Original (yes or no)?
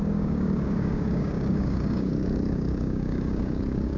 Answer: no